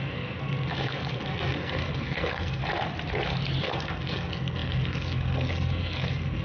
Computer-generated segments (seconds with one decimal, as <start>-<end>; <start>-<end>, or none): 0.0-2.6; 3.6-6.4